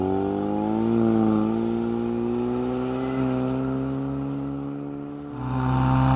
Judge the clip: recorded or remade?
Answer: recorded